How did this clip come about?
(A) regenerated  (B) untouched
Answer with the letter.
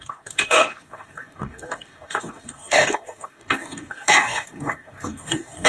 A